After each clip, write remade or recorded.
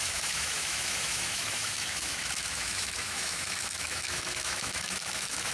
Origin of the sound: remade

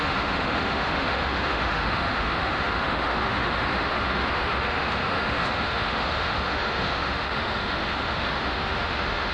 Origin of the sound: remade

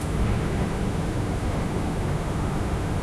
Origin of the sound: remade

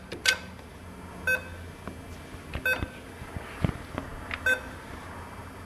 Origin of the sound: recorded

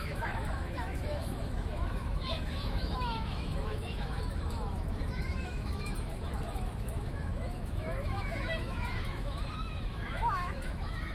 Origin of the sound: remade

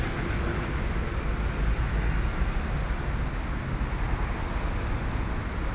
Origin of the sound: recorded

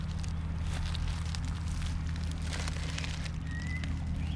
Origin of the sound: recorded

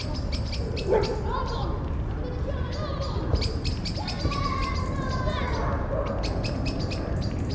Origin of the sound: recorded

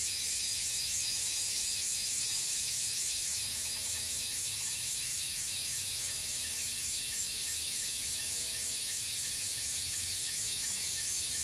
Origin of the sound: remade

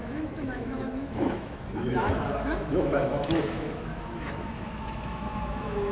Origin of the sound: remade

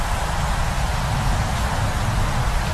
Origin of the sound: recorded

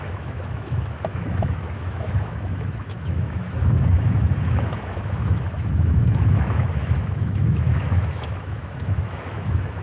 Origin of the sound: remade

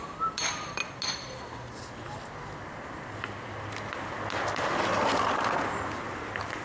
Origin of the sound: recorded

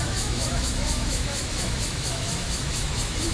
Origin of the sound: remade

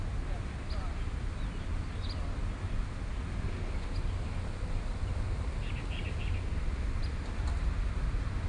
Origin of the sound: recorded